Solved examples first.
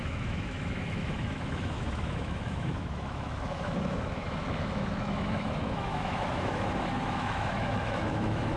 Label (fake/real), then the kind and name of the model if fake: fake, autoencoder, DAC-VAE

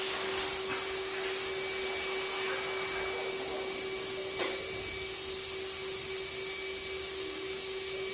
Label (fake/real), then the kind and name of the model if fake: real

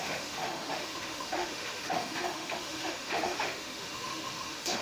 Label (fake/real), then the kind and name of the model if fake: fake, autoencoder, DAC-VAE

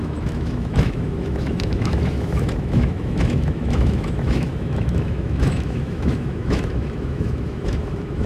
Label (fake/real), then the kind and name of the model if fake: fake, autoencoder, DAC-VAE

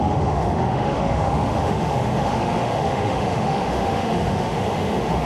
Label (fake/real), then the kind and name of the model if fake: fake, autoencoder, DAC-VAE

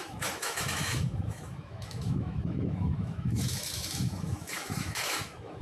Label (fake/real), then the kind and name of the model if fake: fake, autoencoder, DAC-VAE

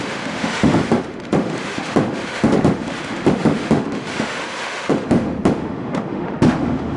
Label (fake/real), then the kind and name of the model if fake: fake, autoencoder, DAC-VAE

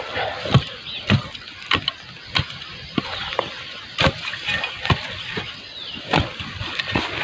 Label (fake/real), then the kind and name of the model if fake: real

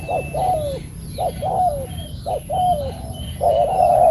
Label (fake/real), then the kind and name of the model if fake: real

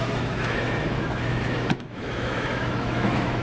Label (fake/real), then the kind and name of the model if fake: fake, autoencoder, DAC-VAE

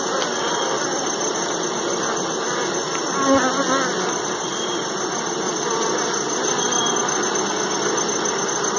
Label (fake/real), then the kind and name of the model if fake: real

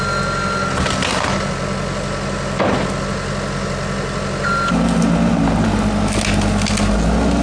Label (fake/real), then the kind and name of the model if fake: real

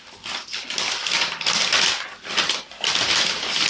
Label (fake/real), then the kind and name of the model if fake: real